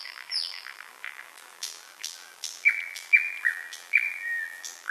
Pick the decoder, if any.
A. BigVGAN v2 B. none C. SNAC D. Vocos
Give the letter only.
A